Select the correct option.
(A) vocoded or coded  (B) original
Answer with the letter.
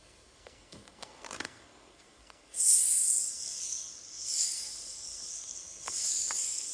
A